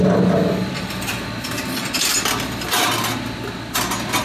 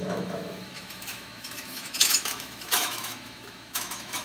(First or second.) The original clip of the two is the first